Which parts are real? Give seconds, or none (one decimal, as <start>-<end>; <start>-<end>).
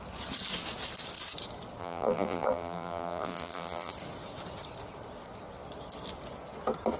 0.0-1.8; 3.9-7.0